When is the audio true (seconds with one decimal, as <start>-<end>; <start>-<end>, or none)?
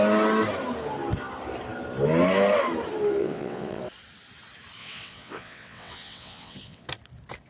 0.0-3.2; 3.8-4.8; 6.9-7.5